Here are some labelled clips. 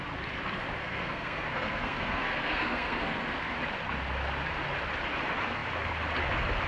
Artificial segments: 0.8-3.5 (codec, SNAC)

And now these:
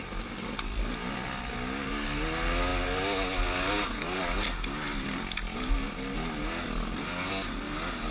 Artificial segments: none

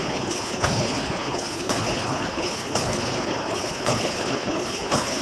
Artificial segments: 0.0-5.2 (codec, HILCodec)